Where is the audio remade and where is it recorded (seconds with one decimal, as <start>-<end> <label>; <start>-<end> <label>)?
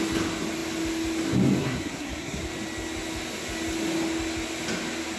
0.0-1.6 recorded; 1.6-2.4 remade; 2.4-5.2 recorded